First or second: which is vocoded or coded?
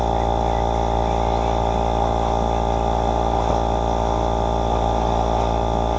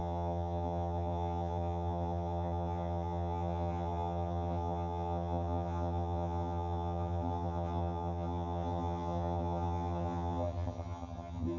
second